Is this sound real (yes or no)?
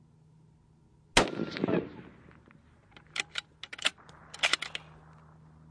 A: yes